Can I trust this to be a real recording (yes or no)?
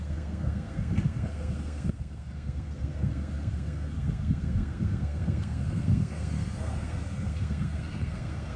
no